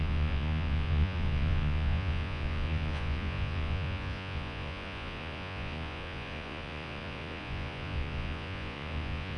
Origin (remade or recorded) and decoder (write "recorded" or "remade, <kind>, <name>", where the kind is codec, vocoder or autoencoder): remade, vocoder, Vocos